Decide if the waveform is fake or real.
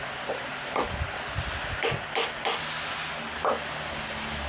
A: real